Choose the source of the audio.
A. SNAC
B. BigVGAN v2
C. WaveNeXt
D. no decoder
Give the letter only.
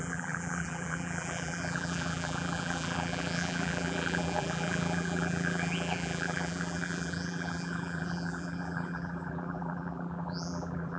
B